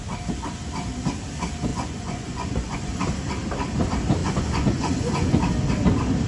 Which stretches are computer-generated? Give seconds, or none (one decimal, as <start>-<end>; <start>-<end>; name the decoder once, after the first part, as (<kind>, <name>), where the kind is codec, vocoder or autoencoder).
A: 1.7-3.0 (vocoder, Vocos); 4.2-5.3